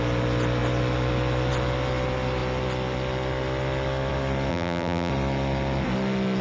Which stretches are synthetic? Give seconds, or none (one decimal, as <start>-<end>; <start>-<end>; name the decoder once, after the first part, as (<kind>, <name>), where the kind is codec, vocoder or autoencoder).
4.5-5.1 (vocoder, BigVGAN v2)